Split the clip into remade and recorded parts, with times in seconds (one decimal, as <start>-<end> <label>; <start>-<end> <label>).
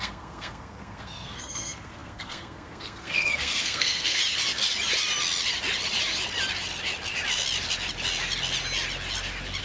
0.0-4.2 remade; 4.2-9.6 recorded